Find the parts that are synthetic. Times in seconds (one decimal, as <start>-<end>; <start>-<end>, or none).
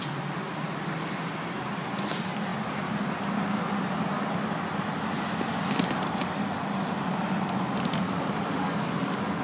none